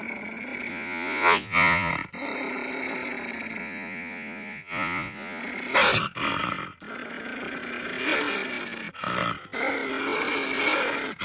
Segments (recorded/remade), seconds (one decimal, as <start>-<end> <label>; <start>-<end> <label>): 0.0-0.7 recorded; 0.7-1.9 remade; 1.9-3.6 recorded; 3.6-5.4 remade; 5.4-11.2 recorded